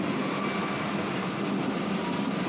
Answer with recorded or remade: recorded